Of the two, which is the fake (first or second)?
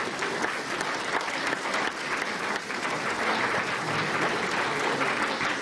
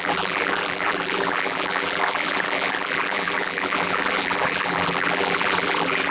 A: second